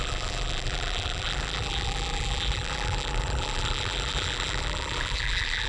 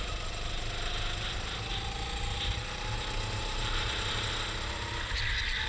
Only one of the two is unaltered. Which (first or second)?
second